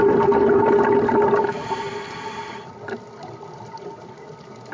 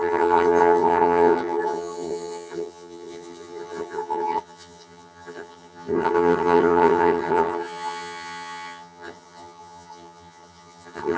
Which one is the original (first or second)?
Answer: first